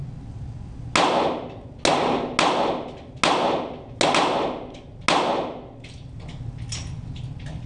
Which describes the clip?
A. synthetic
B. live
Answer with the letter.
B